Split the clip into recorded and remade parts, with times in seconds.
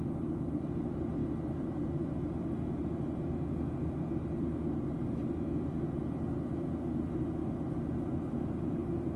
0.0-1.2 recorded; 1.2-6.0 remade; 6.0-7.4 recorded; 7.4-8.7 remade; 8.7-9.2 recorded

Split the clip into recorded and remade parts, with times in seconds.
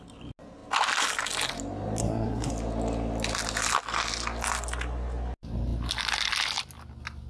0.0-2.0 recorded; 2.0-2.5 remade; 2.5-7.3 recorded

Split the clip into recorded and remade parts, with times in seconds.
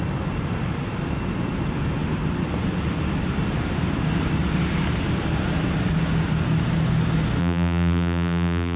0.0-7.4 recorded; 7.4-8.8 remade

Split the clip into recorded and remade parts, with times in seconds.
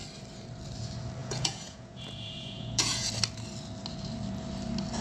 0.0-1.2 recorded; 1.2-3.1 remade; 3.1-5.0 recorded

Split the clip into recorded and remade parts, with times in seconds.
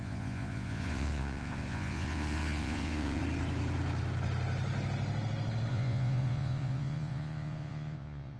0.0-3.2 remade; 3.2-5.7 recorded; 5.7-8.4 remade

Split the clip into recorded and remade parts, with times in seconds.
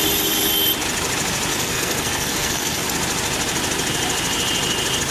0.0-1.5 recorded; 1.5-2.9 remade; 2.9-5.1 recorded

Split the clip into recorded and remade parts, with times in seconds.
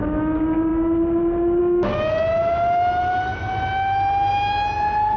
0.0-5.2 recorded